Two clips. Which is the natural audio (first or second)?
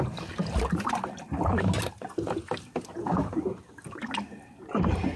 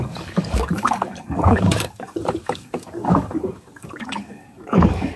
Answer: first